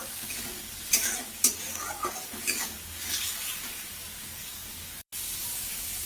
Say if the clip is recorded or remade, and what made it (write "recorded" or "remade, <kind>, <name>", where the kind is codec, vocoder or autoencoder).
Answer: remade, codec, DAC